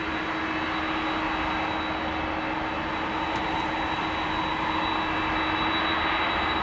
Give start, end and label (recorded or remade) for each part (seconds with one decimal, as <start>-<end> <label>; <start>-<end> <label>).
0.0-6.6 recorded